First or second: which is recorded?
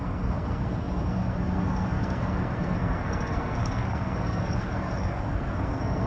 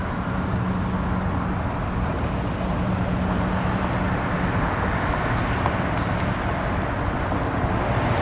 second